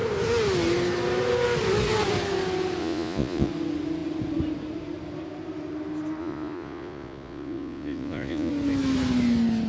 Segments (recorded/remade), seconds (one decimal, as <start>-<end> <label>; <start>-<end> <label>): 0.0-2.8 recorded; 2.8-3.5 remade; 3.5-6.2 recorded; 6.2-8.5 remade; 8.5-9.7 recorded

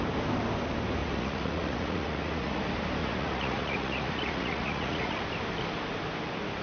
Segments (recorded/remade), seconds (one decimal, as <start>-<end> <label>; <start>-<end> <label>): 0.0-1.0 recorded; 1.0-2.6 remade; 2.6-3.0 recorded; 3.0-5.2 remade; 5.2-6.6 recorded